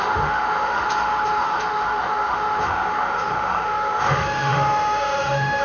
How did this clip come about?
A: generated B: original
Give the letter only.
A